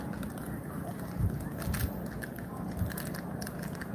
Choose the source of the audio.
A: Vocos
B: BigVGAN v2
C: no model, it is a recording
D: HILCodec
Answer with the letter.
C